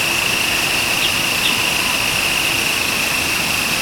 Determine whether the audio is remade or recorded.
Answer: recorded